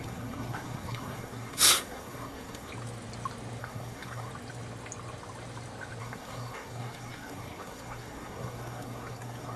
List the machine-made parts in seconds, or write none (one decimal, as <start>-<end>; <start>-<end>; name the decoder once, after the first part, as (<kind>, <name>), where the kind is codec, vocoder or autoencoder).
0.0-2.7 (codec, SNAC); 3.6-4.3; 6.0-9.6